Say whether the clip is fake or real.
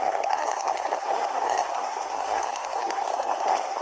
fake